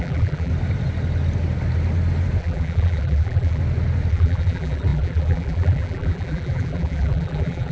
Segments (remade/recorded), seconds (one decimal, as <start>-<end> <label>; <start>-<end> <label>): 0.0-0.5 remade; 0.5-2.4 recorded; 2.4-3.6 remade; 3.6-4.1 recorded; 4.1-7.7 remade